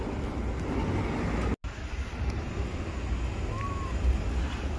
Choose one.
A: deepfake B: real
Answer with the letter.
B